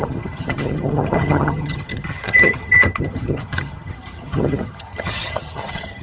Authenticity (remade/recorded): remade